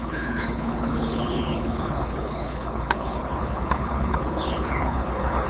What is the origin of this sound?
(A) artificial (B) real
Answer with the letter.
A